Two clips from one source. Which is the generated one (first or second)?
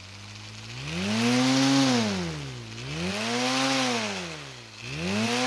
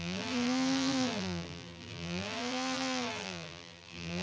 second